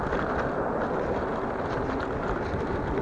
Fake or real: real